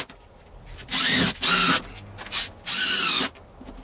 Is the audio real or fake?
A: real